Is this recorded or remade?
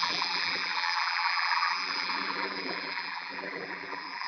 remade